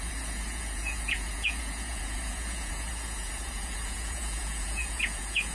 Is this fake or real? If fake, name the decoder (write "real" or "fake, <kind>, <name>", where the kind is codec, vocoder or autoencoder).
fake, vocoder, Vocos